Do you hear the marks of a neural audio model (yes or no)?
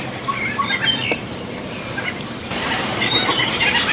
no